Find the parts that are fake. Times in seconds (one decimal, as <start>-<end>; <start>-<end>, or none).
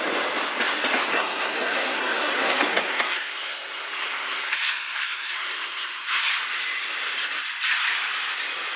1.1-6.3